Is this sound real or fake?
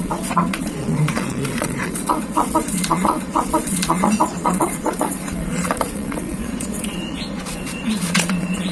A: fake